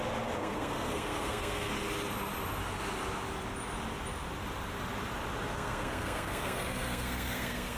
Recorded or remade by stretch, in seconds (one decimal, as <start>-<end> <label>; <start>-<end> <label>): 0.0-0.4 recorded; 0.4-1.7 remade; 1.7-5.5 recorded; 5.5-7.8 remade